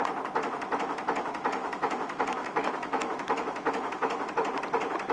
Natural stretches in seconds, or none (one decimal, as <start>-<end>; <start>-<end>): 0.0-1.6; 4.3-5.1